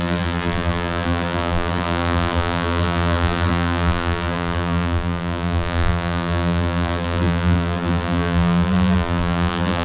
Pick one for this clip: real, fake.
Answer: fake